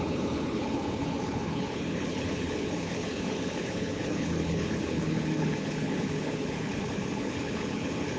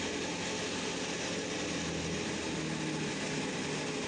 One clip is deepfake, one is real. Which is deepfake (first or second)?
first